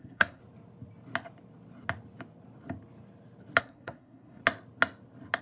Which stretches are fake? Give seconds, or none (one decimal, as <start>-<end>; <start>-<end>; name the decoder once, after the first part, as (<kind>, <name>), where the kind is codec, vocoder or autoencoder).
0.0-0.4 (codec, SNAC); 3.6-4.4